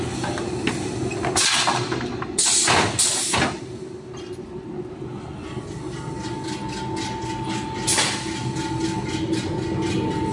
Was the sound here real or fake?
real